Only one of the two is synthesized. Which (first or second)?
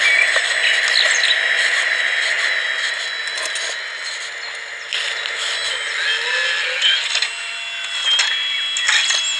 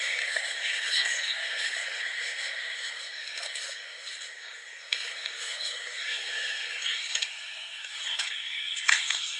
second